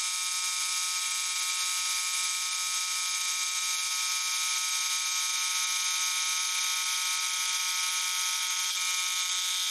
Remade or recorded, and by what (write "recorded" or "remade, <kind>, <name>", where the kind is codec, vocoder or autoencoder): recorded